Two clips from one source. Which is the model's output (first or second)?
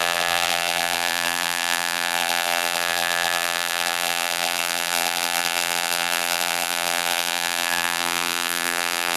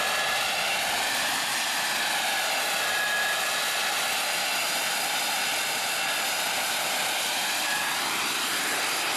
first